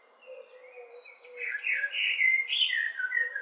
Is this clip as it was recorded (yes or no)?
yes